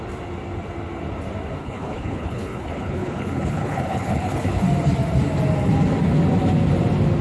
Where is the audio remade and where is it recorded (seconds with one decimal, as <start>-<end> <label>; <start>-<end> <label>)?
0.0-1.6 recorded; 1.6-4.6 remade; 4.6-7.2 recorded